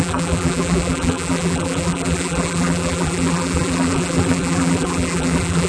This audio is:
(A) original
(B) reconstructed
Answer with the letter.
B